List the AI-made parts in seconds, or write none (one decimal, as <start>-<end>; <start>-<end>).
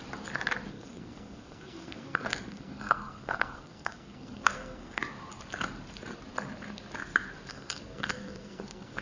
0.7-5.0; 7.5-9.0